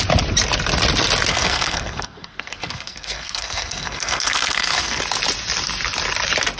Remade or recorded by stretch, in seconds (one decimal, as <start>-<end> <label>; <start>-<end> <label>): 0.0-1.3 recorded; 1.3-5.0 remade; 5.0-6.6 recorded